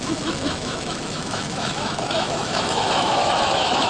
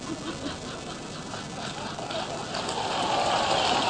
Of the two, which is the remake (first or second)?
first